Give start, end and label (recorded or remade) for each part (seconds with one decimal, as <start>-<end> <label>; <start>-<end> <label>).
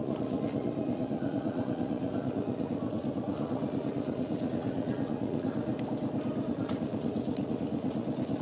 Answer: 0.0-5.7 remade; 5.7-6.5 recorded; 6.5-8.4 remade